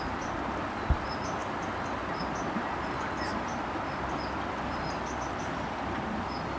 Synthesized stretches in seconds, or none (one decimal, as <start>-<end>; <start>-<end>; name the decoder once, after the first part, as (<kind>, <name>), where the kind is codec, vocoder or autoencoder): none